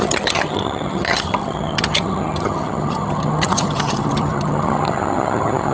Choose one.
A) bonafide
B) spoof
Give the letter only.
B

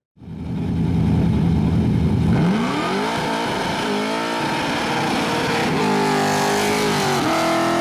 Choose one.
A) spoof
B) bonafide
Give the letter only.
B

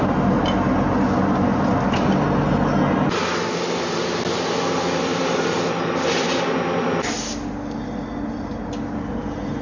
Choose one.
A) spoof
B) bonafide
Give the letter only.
B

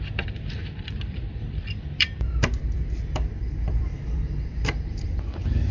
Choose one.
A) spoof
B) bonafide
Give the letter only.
A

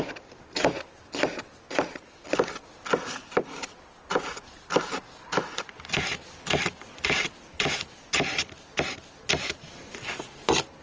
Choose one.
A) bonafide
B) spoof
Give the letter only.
A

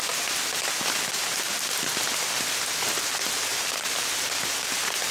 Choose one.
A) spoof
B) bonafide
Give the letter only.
B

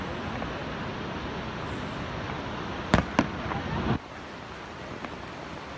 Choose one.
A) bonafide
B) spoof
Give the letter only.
A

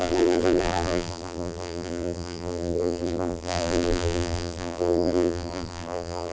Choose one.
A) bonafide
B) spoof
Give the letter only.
B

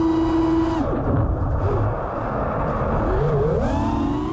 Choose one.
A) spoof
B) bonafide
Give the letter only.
B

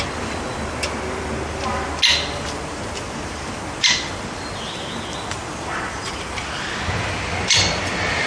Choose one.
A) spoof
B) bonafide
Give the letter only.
B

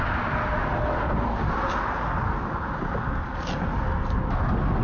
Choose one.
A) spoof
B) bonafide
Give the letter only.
B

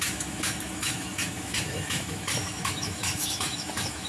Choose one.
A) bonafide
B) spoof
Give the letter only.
B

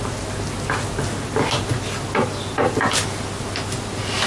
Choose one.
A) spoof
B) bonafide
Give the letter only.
B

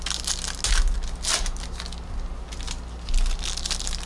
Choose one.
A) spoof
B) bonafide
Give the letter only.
B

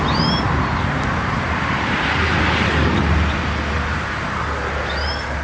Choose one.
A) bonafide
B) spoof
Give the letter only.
B